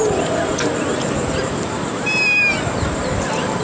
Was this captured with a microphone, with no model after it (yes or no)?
yes